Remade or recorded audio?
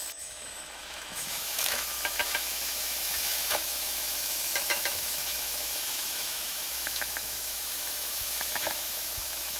remade